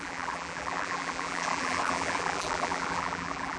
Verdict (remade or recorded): remade